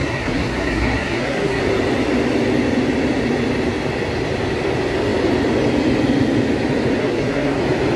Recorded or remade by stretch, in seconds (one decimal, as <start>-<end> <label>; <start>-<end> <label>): 0.0-1.6 remade; 1.6-7.0 recorded; 7.0-7.6 remade; 7.6-8.0 recorded